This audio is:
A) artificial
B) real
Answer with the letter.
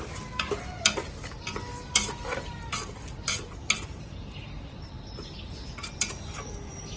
B